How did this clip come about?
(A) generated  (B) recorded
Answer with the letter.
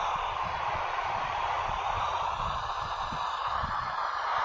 A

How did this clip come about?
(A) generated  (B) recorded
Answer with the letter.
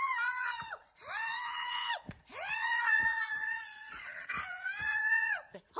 A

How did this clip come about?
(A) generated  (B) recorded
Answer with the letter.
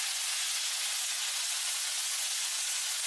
A